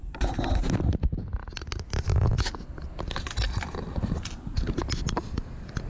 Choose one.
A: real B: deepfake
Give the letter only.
A